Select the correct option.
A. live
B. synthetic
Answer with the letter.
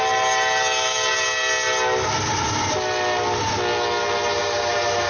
A